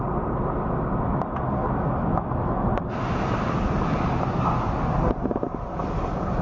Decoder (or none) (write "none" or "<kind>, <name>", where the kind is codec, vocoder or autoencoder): none